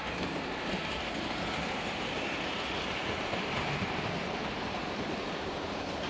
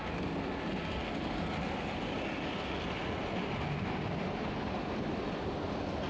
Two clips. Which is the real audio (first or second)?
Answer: second